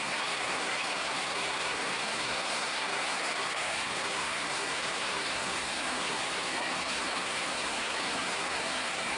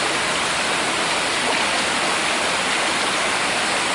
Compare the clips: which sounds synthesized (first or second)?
first